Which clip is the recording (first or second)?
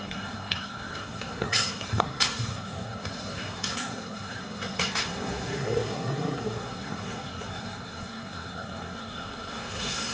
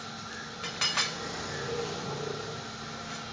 second